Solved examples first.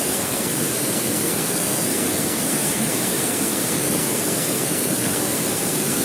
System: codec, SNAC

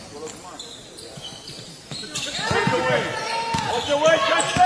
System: none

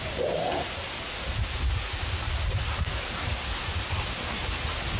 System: vocoder, BigVGAN v2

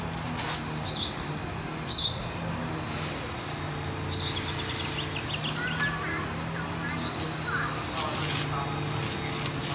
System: none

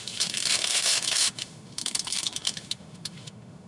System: autoencoder, DAC-VAE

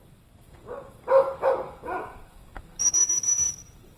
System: codec, DAC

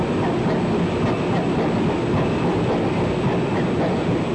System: none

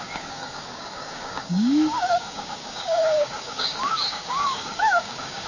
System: codec, DAC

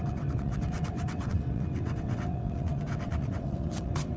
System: vocoder, WaveNeXt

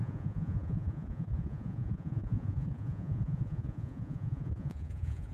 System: vocoder, Vocos